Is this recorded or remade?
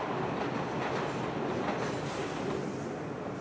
recorded